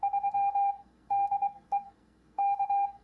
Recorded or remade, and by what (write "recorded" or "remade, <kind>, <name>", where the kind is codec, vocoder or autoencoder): remade, codec, SNAC